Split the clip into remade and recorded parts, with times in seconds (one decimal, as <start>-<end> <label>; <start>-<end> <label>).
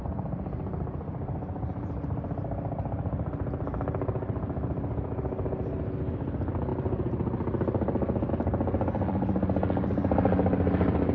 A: 0.0-11.1 recorded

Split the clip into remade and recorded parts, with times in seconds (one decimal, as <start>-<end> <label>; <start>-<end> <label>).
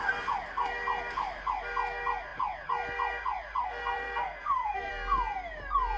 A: 0.0-3.6 recorded; 3.6-4.9 remade; 4.9-6.0 recorded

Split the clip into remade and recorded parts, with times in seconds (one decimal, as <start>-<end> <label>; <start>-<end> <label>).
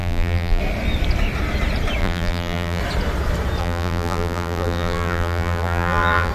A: 0.0-0.6 remade; 0.6-2.0 recorded; 2.0-2.8 remade; 2.8-3.6 recorded; 3.6-6.3 remade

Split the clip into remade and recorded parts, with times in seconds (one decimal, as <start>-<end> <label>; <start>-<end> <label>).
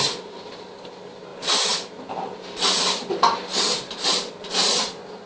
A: 0.0-5.3 recorded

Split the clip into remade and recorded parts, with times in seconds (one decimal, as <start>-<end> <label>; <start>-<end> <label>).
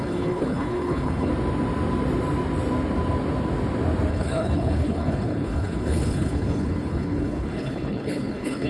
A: 0.0-1.3 remade; 1.3-4.1 recorded; 4.1-8.7 remade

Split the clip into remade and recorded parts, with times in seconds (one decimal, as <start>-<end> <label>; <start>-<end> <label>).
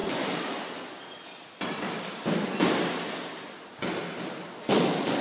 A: 0.0-5.2 recorded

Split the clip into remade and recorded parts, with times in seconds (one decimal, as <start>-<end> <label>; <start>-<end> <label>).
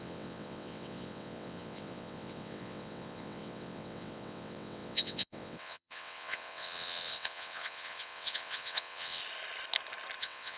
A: 0.0-9.2 remade; 9.2-10.2 recorded; 10.2-10.6 remade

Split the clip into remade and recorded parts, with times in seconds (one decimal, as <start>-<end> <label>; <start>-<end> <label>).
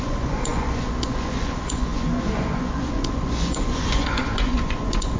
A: 0.0-5.2 remade